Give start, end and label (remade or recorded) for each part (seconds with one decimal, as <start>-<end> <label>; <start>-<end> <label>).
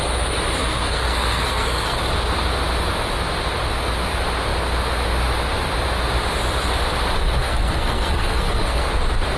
0.0-0.6 recorded; 0.6-2.0 remade; 2.0-7.4 recorded; 7.4-8.9 remade; 8.9-9.4 recorded